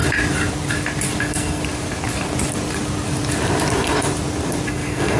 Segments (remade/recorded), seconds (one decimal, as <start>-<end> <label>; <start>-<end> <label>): 0.0-1.2 recorded; 1.2-1.6 remade; 1.6-4.7 recorded; 4.7-5.2 remade